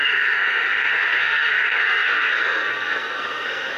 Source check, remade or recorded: remade